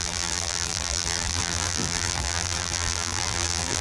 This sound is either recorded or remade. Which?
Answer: remade